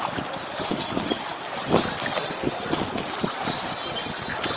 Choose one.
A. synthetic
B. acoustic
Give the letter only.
B